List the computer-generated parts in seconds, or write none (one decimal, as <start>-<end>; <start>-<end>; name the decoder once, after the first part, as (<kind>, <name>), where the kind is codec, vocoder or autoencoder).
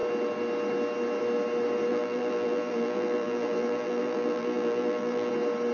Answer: 1.9-5.3 (vocoder, BigVGAN v2)